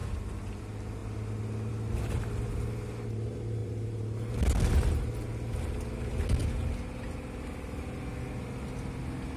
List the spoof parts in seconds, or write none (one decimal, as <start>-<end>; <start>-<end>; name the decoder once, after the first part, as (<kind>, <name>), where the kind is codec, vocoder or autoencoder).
0.0-0.6 (vocoder, BigVGAN v2); 3.6-4.3